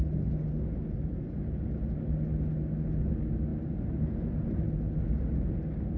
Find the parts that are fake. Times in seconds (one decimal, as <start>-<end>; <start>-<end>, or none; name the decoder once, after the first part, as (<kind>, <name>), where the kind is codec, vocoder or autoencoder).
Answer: 3.5-4.6 (vocoder, BigVGAN v2)